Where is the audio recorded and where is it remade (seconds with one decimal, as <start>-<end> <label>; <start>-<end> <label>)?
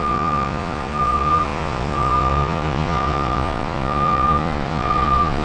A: 0.0-5.4 remade